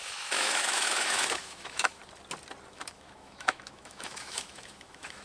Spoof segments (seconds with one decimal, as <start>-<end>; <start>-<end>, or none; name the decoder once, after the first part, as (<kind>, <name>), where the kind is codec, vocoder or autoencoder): 0.0-2.0 (autoencoder, DAC-VAE); 2.7-5.2